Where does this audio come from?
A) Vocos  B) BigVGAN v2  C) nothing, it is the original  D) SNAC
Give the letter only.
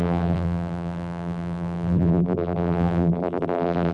B